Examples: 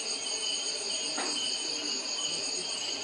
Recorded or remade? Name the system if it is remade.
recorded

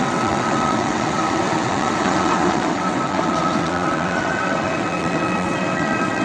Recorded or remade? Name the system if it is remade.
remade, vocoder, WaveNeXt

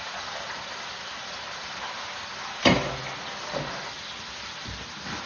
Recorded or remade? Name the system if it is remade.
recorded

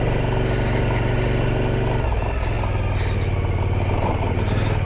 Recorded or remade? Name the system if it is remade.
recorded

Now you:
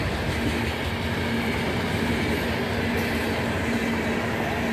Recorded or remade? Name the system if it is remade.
recorded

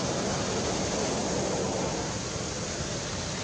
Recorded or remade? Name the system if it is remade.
recorded